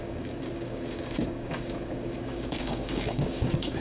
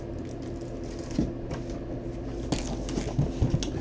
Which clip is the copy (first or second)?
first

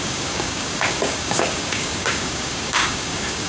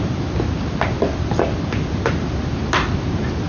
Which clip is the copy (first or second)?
first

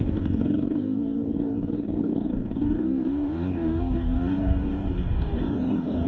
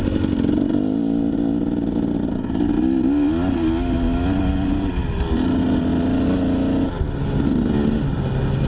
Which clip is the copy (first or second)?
first